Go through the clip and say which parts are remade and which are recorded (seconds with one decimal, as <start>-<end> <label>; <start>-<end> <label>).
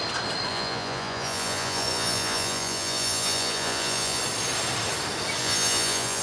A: 0.0-0.5 recorded; 0.5-4.2 remade; 4.2-5.4 recorded; 5.4-6.2 remade